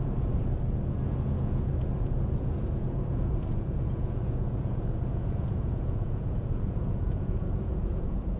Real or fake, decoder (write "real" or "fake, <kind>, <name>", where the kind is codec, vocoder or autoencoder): fake, vocoder, Vocos